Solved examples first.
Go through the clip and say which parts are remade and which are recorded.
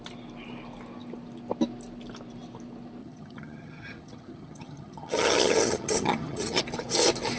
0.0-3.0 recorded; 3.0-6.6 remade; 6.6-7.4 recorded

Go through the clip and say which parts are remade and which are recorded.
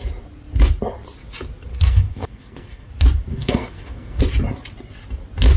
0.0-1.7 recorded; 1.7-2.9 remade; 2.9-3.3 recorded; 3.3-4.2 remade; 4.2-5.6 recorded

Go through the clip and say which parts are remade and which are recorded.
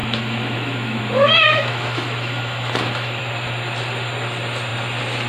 0.0-3.2 remade; 3.2-5.3 recorded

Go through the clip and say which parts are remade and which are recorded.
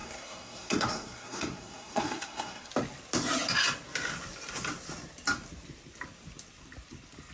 0.0-2.7 remade; 2.7-7.3 recorded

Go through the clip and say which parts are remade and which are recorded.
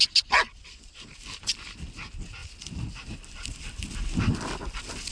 0.0-5.1 recorded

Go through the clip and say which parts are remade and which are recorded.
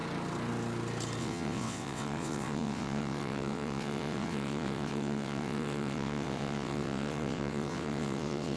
0.0-1.2 recorded; 1.2-8.6 remade